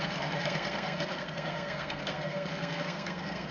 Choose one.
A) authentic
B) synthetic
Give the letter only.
B